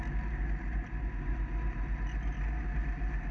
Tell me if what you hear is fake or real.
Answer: real